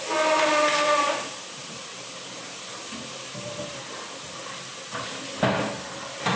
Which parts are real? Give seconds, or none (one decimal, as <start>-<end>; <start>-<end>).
0.0-6.4